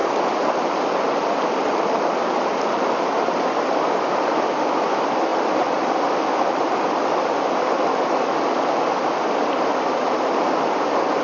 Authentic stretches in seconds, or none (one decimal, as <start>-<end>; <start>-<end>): 2.4-5.3; 8.6-11.2